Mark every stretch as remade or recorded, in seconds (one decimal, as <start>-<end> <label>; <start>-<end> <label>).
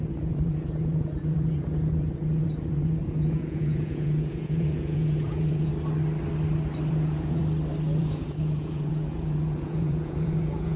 0.0-5.7 remade; 5.7-6.9 recorded; 6.9-7.4 remade; 7.4-8.0 recorded; 8.0-10.8 remade